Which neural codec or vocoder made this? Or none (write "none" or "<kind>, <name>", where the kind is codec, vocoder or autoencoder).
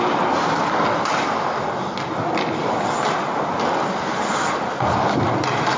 none